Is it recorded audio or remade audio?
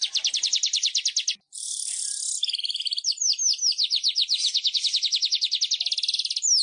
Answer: recorded